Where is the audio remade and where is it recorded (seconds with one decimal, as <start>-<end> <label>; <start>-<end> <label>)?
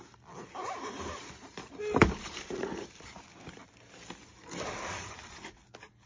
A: 0.0-0.6 recorded; 0.6-3.3 remade; 3.3-6.1 recorded